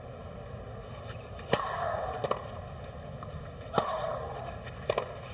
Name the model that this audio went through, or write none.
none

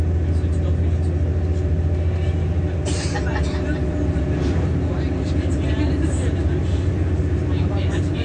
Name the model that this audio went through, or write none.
none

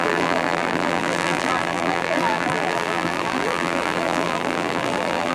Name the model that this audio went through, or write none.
vocoder, BigVGAN v2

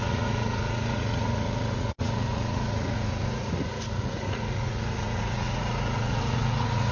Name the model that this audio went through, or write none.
vocoder, Vocos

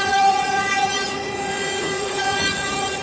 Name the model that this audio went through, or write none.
vocoder, Vocos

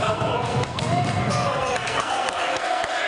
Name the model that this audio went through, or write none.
codec, SNAC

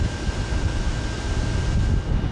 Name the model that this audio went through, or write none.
none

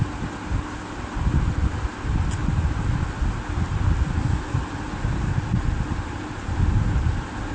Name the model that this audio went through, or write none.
none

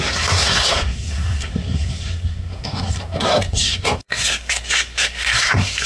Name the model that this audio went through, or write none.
codec, SNAC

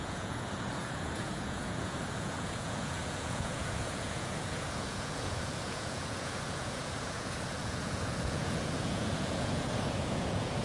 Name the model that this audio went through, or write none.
vocoder, Vocos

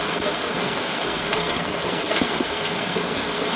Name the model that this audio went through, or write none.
codec, SNAC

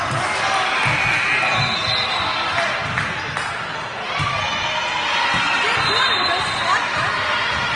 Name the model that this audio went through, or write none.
none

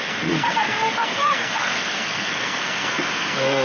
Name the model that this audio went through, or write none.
codec, SNAC